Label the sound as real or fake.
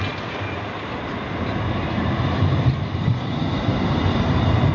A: real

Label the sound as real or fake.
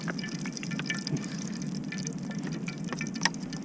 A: real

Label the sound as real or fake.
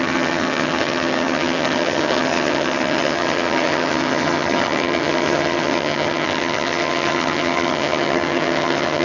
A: fake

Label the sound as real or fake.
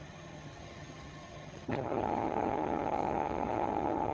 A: fake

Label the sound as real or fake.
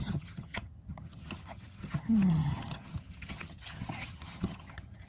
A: fake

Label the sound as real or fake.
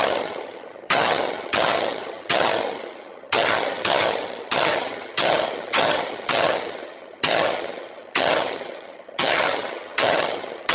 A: fake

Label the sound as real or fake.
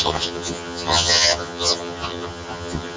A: fake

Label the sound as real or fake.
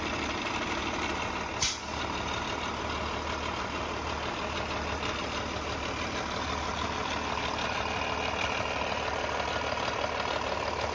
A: real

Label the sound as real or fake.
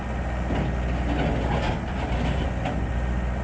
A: real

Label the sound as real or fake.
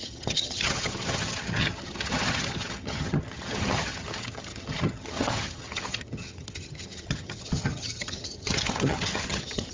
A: fake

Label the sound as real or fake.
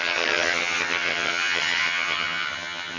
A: fake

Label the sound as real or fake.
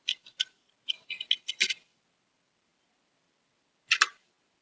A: real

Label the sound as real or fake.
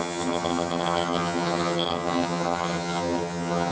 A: fake